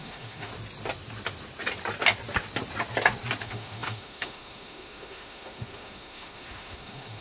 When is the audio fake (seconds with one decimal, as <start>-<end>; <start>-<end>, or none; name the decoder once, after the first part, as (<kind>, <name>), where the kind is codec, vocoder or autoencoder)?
0.0-0.5 (autoencoder, DAC-VAE); 3.4-7.2